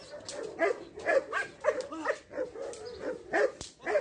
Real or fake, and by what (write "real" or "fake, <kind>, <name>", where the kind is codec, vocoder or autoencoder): real